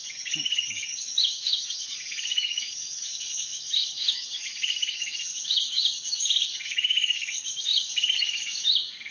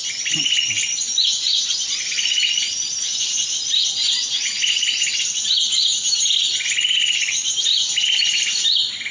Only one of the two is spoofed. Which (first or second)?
first